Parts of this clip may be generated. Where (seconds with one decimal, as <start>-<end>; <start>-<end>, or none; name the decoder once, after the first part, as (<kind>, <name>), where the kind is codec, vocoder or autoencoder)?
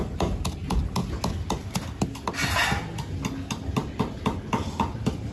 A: none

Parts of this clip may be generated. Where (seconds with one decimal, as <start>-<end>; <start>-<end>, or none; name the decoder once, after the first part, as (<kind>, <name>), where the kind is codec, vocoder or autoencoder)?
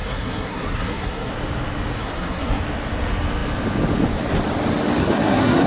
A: 0.0-1.3 (codec, SNAC); 2.0-2.6; 5.0-5.7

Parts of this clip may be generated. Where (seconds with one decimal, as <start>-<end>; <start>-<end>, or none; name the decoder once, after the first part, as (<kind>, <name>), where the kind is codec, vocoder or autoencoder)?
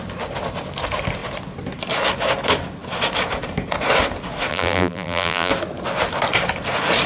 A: 4.5-5.5 (vocoder, BigVGAN v2)